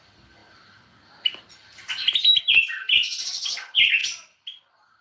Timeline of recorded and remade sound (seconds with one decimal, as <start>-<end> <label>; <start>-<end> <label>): 0.0-5.0 recorded